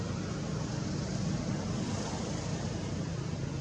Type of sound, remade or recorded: recorded